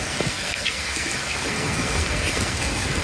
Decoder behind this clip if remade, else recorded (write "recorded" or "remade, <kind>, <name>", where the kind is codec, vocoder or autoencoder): remade, codec, SNAC